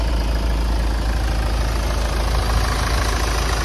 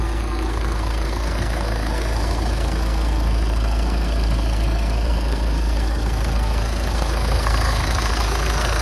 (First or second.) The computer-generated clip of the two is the second